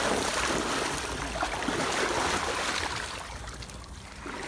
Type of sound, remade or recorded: recorded